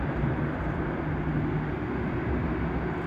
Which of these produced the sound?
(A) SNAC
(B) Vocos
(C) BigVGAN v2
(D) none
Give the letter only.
D